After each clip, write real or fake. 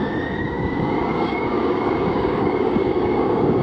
fake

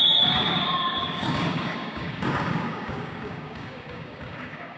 fake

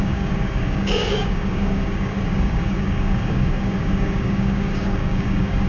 fake